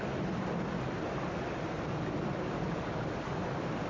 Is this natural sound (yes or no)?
yes